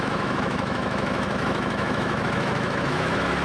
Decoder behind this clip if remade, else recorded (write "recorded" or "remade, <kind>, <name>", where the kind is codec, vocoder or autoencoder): remade, autoencoder, DAC-VAE